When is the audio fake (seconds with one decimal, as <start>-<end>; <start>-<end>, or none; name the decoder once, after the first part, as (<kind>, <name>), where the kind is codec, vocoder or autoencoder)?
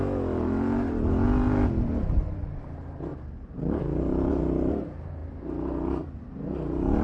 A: none